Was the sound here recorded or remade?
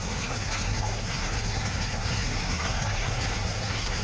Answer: remade